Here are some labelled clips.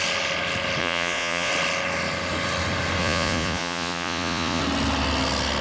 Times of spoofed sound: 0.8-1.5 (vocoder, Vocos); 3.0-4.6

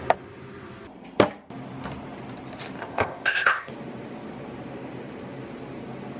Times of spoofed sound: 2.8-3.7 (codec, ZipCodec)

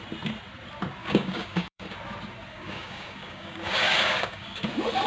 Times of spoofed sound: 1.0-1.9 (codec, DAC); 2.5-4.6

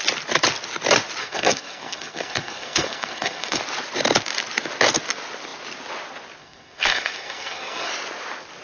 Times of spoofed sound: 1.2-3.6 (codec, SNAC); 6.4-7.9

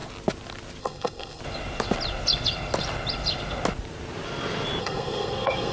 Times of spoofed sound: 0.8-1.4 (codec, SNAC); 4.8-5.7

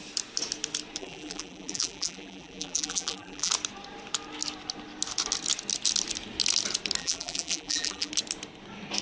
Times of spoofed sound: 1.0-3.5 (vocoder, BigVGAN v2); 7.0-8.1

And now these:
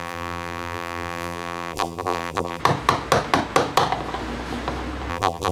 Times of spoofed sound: 0.0-2.6 (vocoder, BigVGAN v2); 5.1-5.5